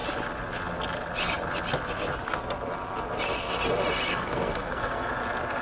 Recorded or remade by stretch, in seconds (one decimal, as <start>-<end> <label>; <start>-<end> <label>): 0.0-4.1 recorded; 4.1-5.1 remade; 5.1-5.6 recorded